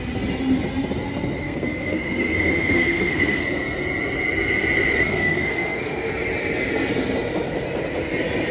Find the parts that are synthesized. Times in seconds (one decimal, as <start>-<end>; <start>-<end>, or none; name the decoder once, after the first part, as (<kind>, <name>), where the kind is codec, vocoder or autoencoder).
1.4-3.4 (codec, SNAC); 4.9-6.1